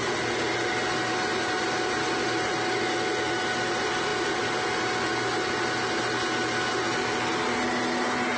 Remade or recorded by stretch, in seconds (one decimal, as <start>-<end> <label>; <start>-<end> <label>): 0.0-8.4 recorded